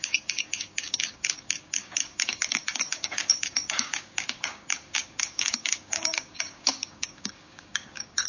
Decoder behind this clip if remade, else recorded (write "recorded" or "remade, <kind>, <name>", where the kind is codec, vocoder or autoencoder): remade, codec, DAC